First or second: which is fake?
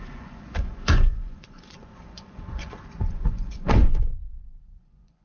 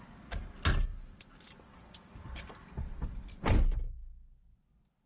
first